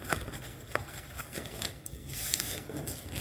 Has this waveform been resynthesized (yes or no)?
yes